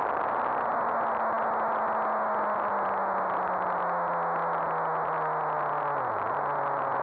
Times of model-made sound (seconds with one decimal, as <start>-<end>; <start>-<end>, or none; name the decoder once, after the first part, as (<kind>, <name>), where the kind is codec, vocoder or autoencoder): none